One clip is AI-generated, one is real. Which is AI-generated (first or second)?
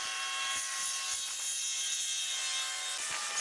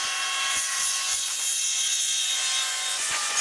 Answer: second